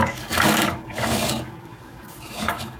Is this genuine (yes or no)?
no